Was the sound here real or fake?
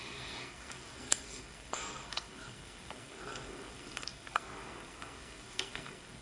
fake